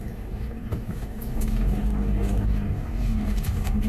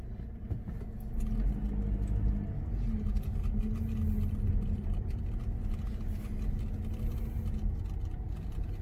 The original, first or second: second